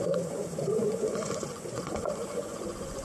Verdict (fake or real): fake